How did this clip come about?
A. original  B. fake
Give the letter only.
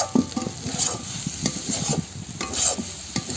A